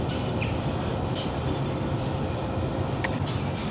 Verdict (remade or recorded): recorded